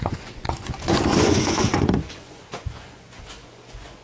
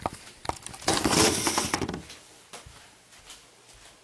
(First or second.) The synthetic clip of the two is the first